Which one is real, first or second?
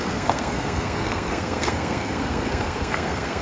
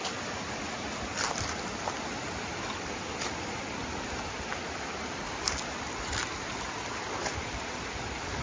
second